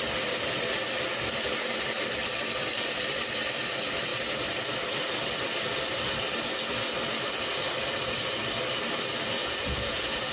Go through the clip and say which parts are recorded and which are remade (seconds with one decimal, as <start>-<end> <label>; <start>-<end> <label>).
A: 0.0-9.4 recorded; 9.4-10.3 remade